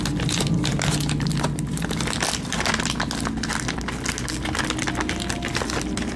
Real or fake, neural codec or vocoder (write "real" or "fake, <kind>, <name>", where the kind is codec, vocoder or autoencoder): real